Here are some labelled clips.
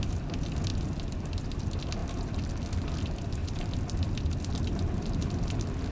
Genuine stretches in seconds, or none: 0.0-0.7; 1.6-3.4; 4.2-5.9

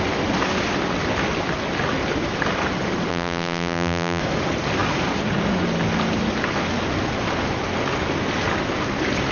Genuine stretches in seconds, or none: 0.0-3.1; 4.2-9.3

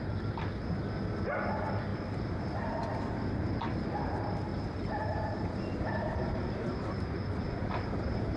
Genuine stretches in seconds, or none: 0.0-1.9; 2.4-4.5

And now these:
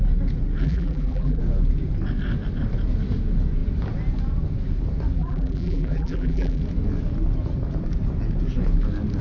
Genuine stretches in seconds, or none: 0.0-0.6; 1.4-5.2; 6.6-9.2